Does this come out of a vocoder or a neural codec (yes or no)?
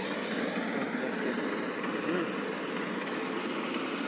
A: no